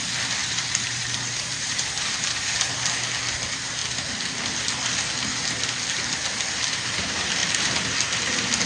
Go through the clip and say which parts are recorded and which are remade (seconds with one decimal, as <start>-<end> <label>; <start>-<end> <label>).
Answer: 0.0-0.4 recorded; 0.4-2.7 remade; 2.7-8.7 recorded